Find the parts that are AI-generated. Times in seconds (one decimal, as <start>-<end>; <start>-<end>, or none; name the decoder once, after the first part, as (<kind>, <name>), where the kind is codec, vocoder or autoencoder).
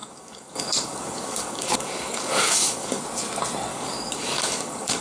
0.0-3.0 (codec, DAC); 3.7-5.0